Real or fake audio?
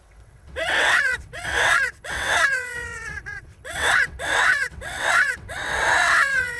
fake